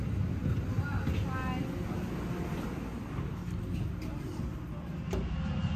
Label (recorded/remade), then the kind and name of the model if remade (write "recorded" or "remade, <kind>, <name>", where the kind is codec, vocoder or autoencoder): recorded